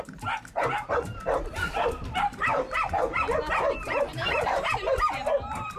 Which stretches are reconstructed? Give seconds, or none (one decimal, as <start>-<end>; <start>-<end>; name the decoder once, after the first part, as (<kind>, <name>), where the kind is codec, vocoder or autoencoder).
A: 0.0-2.5 (vocoder, BigVGAN v2); 3.5-5.8